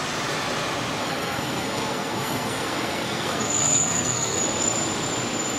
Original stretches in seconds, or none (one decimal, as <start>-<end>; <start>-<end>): 0.0-1.0; 4.4-5.6